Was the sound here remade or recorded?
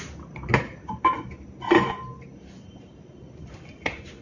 remade